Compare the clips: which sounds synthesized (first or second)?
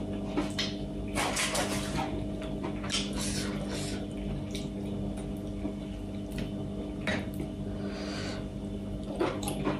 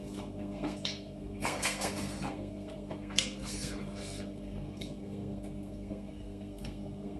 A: second